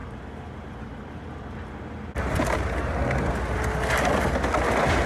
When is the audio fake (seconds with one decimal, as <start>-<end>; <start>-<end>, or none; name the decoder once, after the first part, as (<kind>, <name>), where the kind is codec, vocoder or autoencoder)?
0.0-1.2 (vocoder, BigVGAN v2); 1.6-3.3